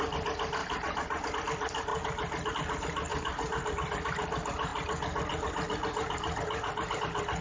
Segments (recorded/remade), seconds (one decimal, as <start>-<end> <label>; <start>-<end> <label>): 0.0-0.6 recorded; 0.6-1.3 remade; 1.3-3.1 recorded; 3.1-3.7 remade; 3.7-7.4 recorded